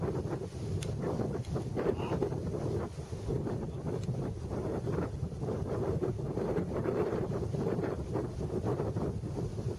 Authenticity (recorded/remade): recorded